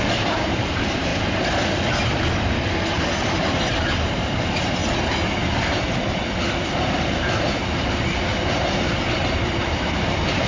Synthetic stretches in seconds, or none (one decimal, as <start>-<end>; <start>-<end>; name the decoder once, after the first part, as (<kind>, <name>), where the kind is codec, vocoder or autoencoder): 0.0-1.1 (vocoder, BigVGAN v2); 2.9-4.8; 5.6-6.0; 6.6-10.5